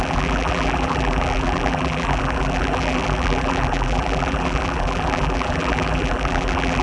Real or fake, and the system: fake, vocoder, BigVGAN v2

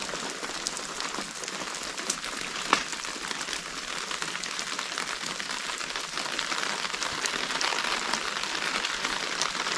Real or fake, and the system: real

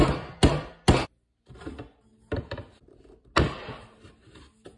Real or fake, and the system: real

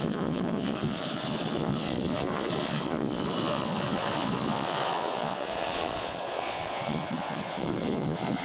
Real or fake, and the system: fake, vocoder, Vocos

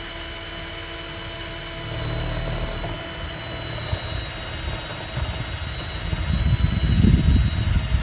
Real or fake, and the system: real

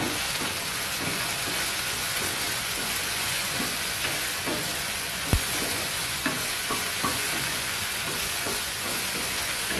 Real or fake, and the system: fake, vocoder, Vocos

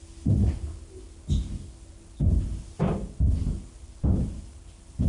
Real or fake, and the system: real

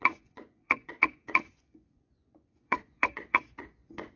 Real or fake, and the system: fake, vocoder, Vocos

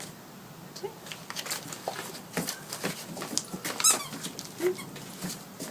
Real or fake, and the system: real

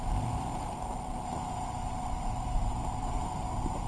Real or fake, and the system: fake, vocoder, BigVGAN v2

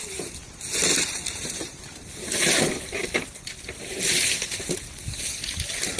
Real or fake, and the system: real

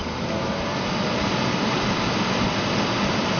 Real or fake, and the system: real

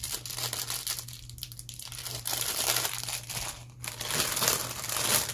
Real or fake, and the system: real